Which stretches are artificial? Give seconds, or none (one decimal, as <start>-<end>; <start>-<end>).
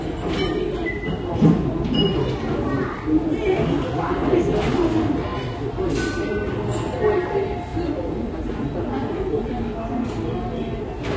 7.7-9.6